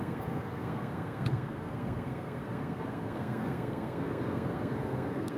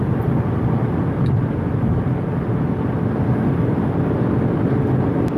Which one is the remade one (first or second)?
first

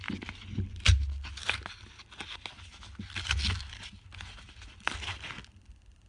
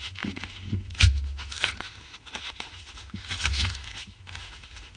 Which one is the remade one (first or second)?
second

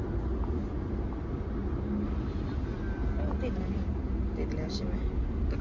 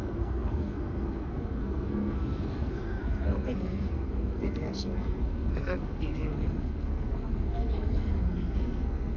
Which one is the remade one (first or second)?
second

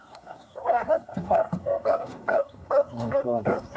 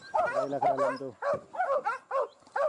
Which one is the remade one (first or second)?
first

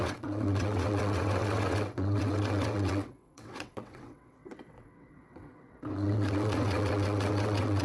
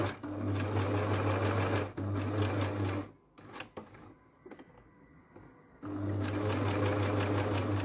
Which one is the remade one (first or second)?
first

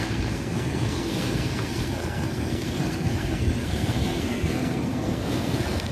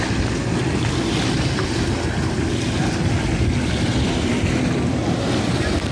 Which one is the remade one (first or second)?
first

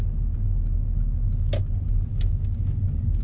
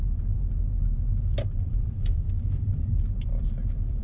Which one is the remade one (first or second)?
second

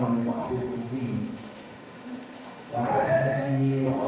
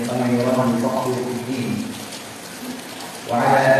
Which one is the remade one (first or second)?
first